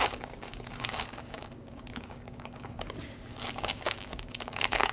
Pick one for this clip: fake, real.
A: fake